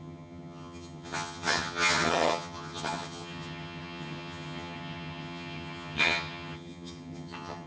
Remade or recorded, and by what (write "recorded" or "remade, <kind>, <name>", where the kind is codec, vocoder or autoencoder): remade, vocoder, HiFi-GAN